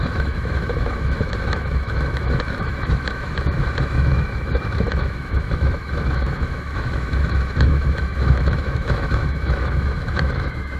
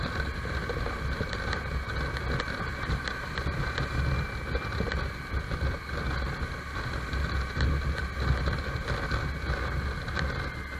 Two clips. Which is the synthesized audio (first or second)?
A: first